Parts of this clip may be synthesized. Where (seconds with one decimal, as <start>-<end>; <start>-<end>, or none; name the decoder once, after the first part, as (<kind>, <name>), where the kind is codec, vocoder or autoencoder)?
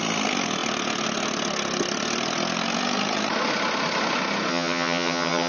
4.5-5.5 (vocoder, HiFi-GAN)